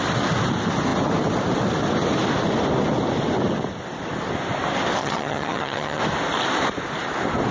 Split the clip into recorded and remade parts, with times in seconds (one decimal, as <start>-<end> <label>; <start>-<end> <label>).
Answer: 0.0-5.0 recorded; 5.0-6.0 remade; 6.0-7.5 recorded